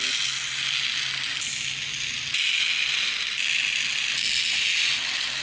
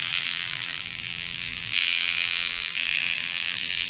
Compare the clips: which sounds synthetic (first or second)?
second